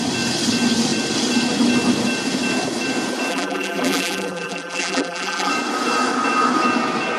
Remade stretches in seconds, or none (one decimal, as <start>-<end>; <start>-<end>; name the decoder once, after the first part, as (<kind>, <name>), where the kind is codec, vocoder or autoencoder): 3.3-5.5 (vocoder, BigVGAN v2)